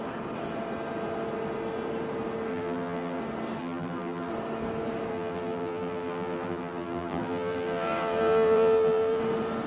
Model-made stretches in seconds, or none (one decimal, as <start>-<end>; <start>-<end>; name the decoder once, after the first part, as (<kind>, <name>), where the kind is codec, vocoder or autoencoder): 2.5-3.2 (vocoder, BigVGAN v2); 3.6-4.3; 5.1-9.2